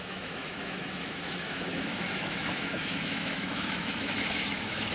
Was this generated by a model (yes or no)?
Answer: yes